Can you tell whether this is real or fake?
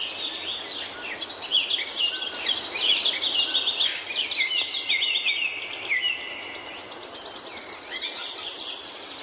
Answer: real